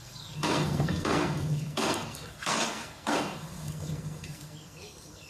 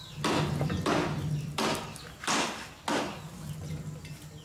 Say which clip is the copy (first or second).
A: first